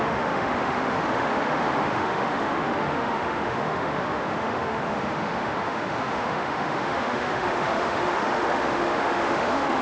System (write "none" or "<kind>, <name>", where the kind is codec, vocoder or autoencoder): autoencoder, DAC-VAE